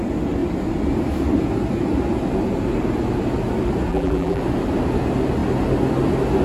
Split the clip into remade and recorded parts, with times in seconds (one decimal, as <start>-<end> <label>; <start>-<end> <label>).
0.0-3.9 recorded; 3.9-4.4 remade; 4.4-6.4 recorded

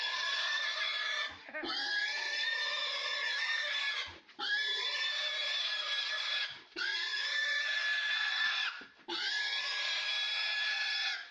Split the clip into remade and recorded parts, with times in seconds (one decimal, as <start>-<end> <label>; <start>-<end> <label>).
0.0-11.3 recorded

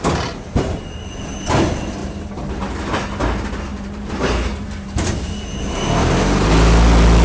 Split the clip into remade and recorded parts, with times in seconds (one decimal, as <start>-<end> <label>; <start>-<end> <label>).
0.0-2.0 recorded; 2.0-2.8 remade; 2.8-3.7 recorded; 3.7-6.5 remade; 6.5-7.2 recorded

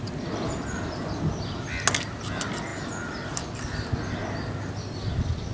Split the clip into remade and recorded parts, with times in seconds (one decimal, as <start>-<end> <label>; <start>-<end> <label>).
0.0-5.5 recorded

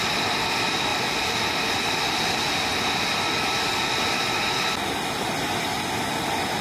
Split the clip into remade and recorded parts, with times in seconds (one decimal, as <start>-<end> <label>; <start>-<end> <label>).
0.0-6.6 recorded

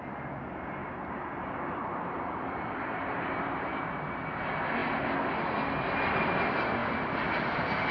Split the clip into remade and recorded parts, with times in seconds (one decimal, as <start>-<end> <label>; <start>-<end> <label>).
0.0-0.8 recorded; 0.8-3.9 remade; 3.9-7.9 recorded

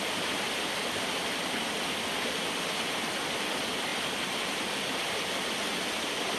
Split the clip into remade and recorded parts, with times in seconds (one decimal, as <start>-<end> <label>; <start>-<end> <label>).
0.0-3.9 recorded; 3.9-5.1 remade; 5.1-6.4 recorded

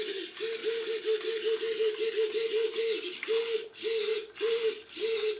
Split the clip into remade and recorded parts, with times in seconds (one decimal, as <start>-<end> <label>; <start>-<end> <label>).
0.0-4.1 recorded; 4.1-4.7 remade; 4.7-5.4 recorded